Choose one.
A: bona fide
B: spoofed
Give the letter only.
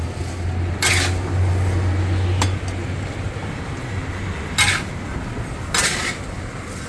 A